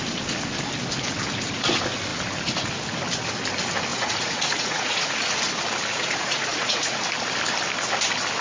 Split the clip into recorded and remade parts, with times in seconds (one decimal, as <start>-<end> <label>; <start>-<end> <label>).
0.0-3.9 recorded; 3.9-5.4 remade; 5.4-5.9 recorded; 5.9-7.0 remade; 7.0-8.4 recorded